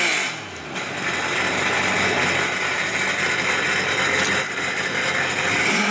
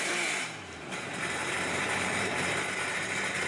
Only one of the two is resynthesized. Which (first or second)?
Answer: second